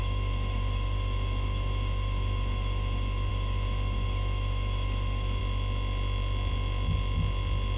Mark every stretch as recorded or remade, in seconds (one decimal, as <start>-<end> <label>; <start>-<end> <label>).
0.0-5.4 remade; 5.4-7.8 recorded